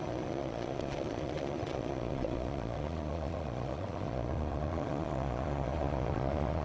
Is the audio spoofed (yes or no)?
yes